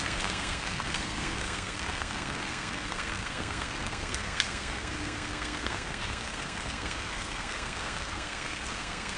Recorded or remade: remade